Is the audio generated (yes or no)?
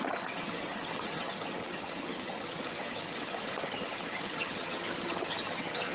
yes